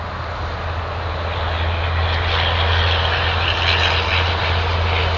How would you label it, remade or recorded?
recorded